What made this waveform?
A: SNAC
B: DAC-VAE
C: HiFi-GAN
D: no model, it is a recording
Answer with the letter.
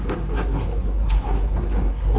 A